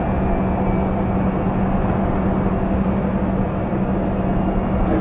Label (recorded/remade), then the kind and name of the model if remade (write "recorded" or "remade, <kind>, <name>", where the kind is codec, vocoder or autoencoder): recorded